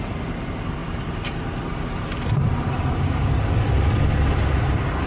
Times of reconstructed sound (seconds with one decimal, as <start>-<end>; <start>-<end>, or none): none